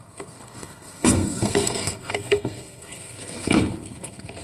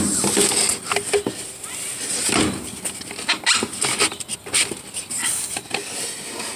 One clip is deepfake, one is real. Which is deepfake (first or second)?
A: first